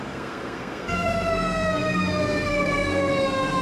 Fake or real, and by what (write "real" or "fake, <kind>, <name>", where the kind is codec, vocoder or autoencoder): fake, codec, SNAC